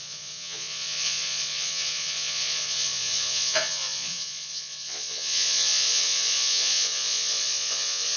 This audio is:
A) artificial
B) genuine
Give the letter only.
A